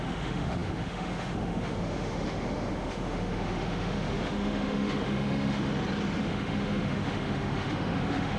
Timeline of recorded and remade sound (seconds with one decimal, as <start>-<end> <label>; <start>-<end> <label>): 0.0-5.7 remade; 5.7-6.2 recorded; 6.2-8.4 remade